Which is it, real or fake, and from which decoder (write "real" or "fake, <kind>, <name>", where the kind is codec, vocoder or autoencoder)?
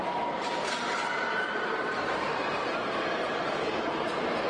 fake, vocoder, BigVGAN v2